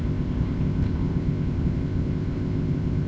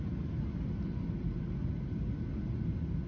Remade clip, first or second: first